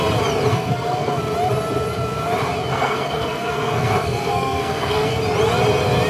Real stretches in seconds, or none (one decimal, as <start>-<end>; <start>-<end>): 0.0-0.5; 1.2-2.7; 5.2-6.1